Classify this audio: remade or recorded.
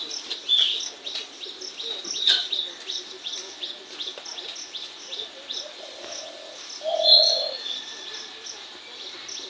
recorded